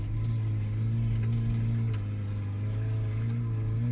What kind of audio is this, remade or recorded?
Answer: recorded